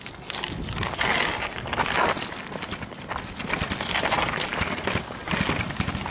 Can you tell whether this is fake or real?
real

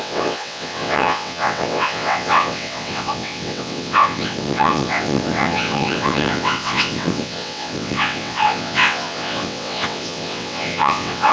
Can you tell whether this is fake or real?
fake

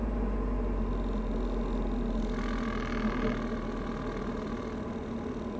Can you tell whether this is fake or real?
real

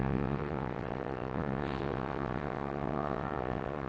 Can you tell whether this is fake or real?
fake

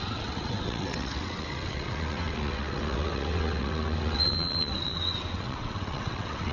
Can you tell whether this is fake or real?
fake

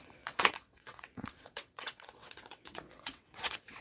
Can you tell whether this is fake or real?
fake